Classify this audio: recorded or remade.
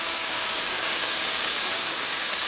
remade